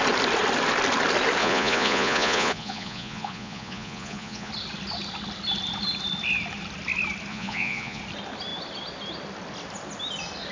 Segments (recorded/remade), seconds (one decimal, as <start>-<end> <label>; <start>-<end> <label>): 0.0-1.4 recorded; 1.4-4.5 remade; 4.5-7.3 recorded; 7.3-8.0 remade; 8.0-10.5 recorded